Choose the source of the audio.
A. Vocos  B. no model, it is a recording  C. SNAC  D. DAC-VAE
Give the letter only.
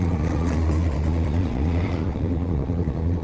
A